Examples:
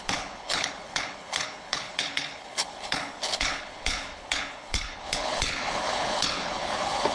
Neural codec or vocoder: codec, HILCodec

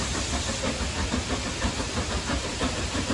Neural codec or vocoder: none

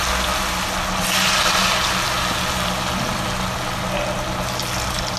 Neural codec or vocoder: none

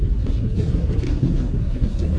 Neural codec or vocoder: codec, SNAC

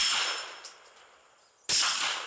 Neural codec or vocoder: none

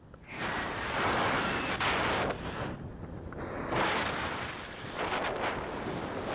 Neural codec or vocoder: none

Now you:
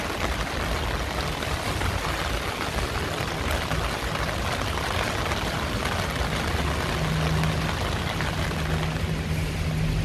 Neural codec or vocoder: none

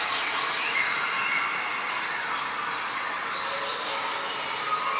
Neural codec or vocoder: none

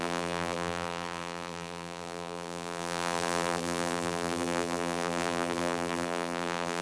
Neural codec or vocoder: vocoder, BigVGAN v2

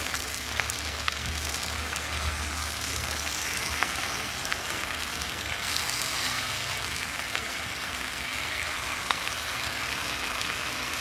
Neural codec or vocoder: codec, SNAC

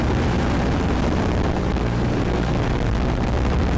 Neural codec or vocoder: vocoder, BigVGAN v2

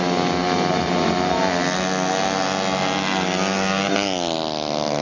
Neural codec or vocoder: none